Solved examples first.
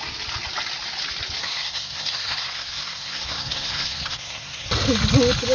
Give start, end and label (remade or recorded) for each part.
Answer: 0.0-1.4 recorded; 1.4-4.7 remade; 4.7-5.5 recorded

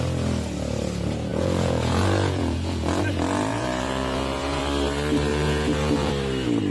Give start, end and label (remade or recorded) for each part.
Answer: 0.0-1.3 recorded; 1.3-3.0 remade; 3.0-3.5 recorded; 3.5-4.6 remade; 4.6-5.3 recorded; 5.3-6.1 remade; 6.1-6.7 recorded

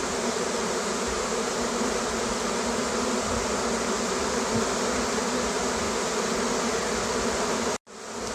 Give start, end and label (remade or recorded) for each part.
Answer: 0.0-2.0 remade; 2.0-8.3 recorded

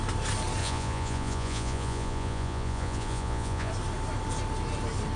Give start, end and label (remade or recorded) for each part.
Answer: 0.0-0.6 recorded; 0.6-3.7 remade; 3.7-5.2 recorded

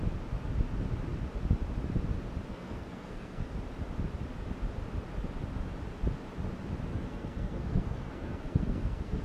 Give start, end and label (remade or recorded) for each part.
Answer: 0.0-2.5 recorded; 2.5-3.6 remade; 3.6-6.9 recorded; 6.9-9.2 remade